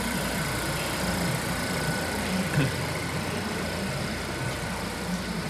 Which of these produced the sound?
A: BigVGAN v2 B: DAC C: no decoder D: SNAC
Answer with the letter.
A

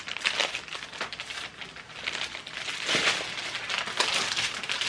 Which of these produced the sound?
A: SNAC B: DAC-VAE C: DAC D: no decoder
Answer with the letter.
D